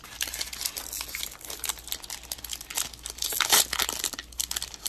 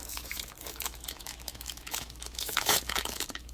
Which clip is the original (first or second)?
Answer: first